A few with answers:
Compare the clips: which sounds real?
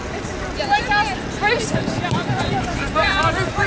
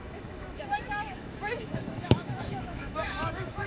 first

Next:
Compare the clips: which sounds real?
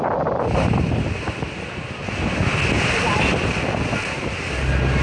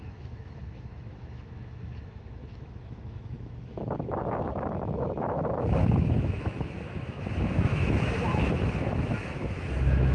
first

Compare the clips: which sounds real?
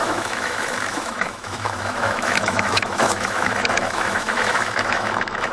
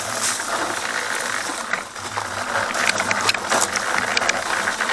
second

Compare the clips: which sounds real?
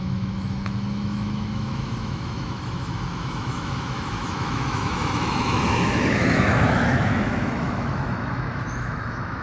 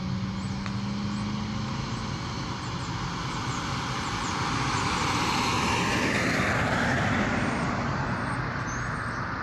second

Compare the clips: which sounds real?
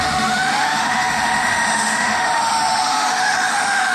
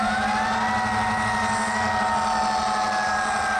second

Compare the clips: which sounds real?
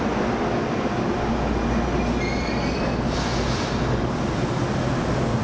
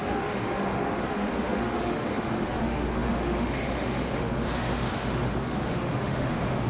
first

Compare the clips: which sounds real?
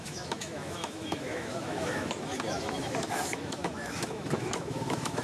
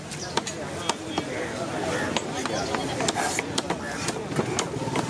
second